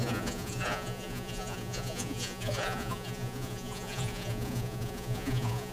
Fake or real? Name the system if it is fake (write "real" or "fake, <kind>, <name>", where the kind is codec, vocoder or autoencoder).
fake, vocoder, Vocos